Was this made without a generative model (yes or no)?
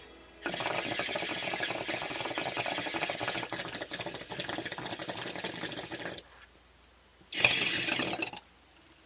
yes